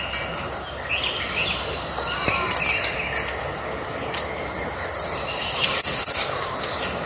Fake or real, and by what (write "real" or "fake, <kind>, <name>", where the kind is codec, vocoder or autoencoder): real